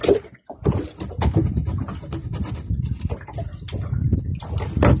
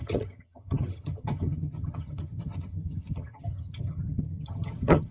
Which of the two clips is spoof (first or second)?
second